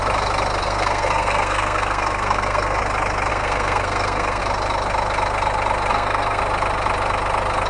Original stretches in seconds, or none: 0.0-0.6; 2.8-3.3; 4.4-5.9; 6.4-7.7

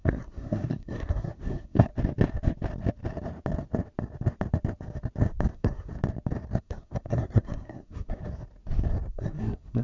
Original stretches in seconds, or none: 1.9-5.5; 5.9-6.6; 8.2-9.1

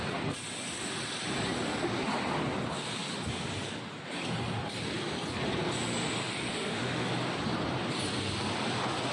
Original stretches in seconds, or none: 0.0-6.5; 7.1-9.1